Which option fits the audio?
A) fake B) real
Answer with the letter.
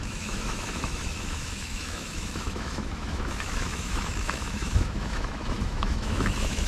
A